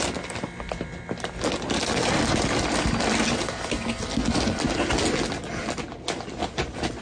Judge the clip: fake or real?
real